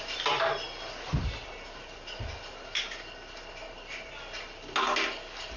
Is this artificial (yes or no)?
no